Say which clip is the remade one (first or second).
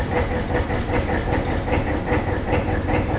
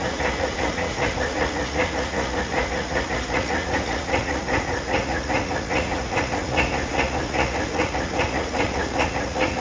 second